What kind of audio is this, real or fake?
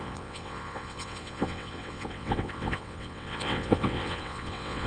fake